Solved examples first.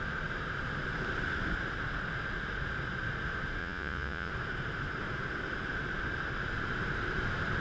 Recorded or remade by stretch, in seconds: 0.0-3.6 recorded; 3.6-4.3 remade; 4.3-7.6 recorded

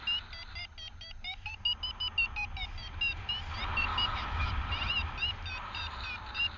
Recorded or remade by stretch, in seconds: 0.0-3.9 recorded; 3.9-4.5 remade; 4.5-6.6 recorded

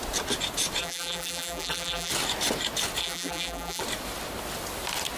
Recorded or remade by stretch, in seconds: 0.0-0.8 recorded; 0.8-2.1 remade; 2.1-3.0 recorded; 3.0-3.8 remade; 3.8-5.2 recorded

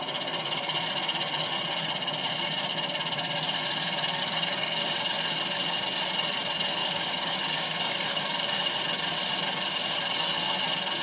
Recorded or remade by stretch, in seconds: 0.0-4.2 recorded; 4.2-4.9 remade; 4.9-6.8 recorded; 6.8-8.6 remade; 8.6-11.0 recorded

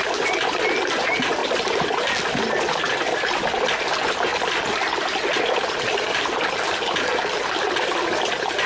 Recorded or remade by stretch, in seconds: 0.0-8.7 recorded

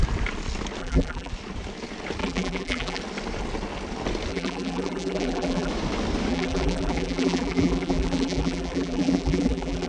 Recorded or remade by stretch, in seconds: 0.0-0.8 recorded; 0.8-1.3 remade; 1.3-2.2 recorded; 2.2-3.0 remade; 3.0-4.3 recorded; 4.3-5.7 remade; 5.7-6.3 recorded; 6.3-9.9 remade